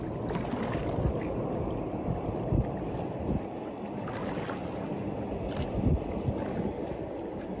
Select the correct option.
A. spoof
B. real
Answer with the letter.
B